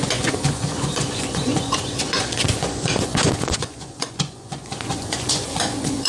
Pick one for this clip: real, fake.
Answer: fake